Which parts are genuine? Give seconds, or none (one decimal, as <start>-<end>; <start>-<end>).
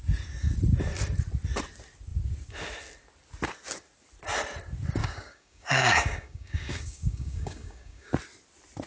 0.0-5.0; 8.1-8.9